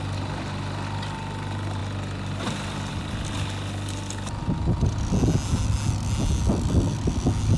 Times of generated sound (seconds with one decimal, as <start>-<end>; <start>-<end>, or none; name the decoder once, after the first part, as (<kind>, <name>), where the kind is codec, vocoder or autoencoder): none